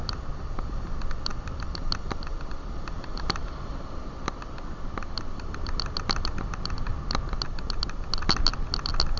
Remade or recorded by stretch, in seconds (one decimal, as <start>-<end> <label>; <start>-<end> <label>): 0.0-9.2 recorded